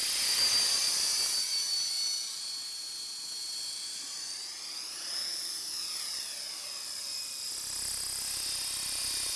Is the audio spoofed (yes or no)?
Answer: no